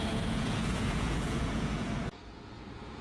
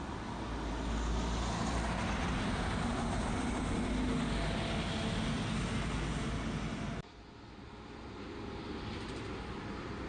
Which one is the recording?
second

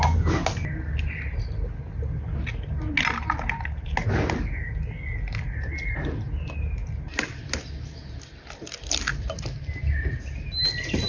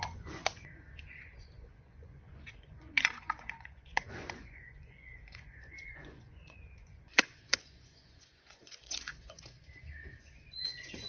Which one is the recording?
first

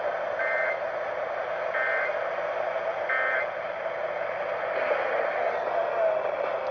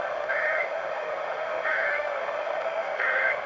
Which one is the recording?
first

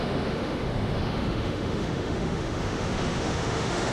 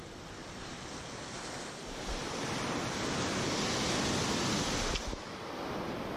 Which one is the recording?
second